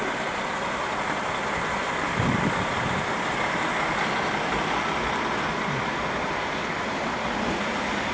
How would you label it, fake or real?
real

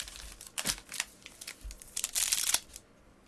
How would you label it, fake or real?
real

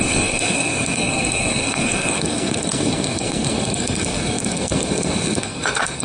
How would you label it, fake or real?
fake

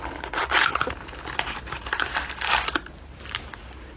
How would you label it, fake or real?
real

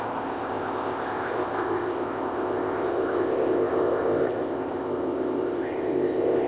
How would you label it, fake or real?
fake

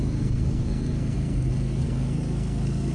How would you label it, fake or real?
fake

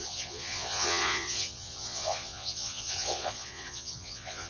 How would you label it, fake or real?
fake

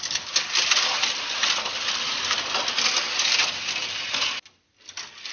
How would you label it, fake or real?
real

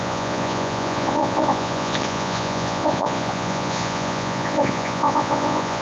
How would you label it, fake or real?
fake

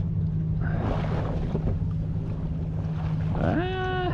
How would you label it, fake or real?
real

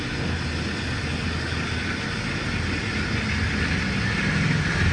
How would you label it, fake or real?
real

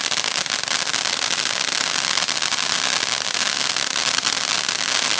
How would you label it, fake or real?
real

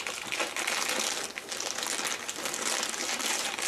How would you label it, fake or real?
real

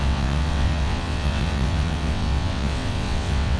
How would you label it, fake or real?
fake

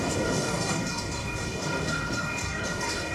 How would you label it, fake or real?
fake